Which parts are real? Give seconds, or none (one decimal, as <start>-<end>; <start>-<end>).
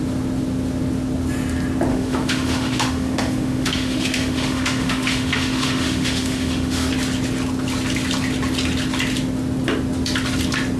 0.0-1.9; 6.9-10.8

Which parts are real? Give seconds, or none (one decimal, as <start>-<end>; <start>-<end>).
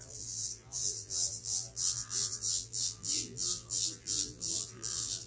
none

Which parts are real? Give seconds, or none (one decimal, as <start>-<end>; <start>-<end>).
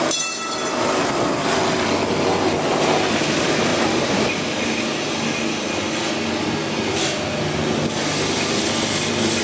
0.0-9.4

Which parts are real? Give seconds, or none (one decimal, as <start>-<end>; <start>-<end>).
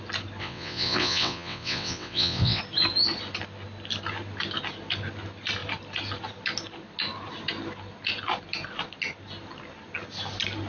0.0-0.4; 2.6-10.7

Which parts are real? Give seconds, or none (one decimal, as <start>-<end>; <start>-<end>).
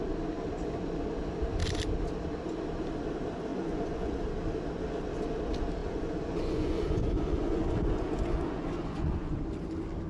0.0-3.5; 4.2-5.8; 9.4-10.1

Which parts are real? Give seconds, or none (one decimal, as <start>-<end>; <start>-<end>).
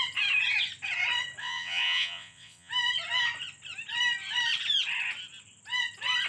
0.0-1.4; 2.7-6.3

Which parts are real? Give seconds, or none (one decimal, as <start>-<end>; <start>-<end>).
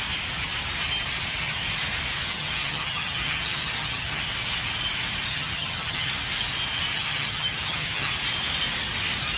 0.0-2.2; 4.2-5.3; 6.1-6.9; 8.1-9.4